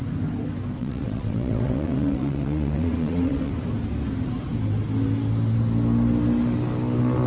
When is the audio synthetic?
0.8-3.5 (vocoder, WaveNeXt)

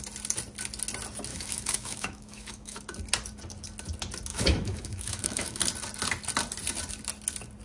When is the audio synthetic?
1.3-2.8 (autoencoder, DAC-VAE); 4.3-5.6

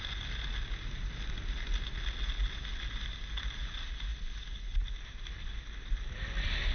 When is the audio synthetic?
none

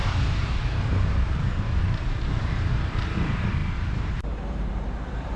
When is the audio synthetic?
0.0-5.4 (vocoder, BigVGAN v2)